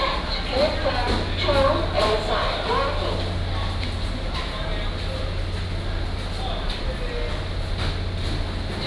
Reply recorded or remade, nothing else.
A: recorded